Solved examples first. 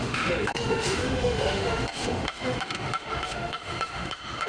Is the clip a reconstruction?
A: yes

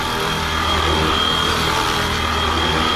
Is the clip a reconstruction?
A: no